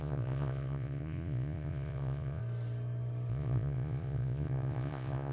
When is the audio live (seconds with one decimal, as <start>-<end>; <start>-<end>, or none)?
2.4-3.3